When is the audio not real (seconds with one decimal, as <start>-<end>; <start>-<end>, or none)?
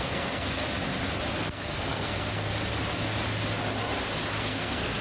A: 0.0-0.6; 1.5-2.5; 4.4-5.0